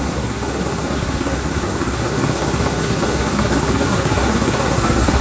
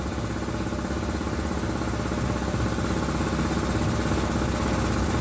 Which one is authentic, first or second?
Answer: second